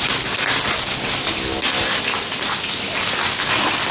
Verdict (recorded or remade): recorded